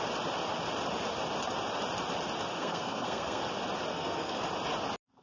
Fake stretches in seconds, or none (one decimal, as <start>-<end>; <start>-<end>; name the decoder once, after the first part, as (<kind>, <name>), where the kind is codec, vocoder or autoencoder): 2.5-3.4 (codec, SNAC); 3.9-4.4